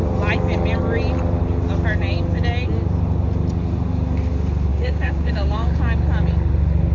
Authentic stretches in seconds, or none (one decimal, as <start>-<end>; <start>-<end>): 0.0-4.7; 5.8-6.9